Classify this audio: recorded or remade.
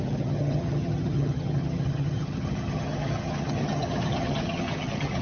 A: remade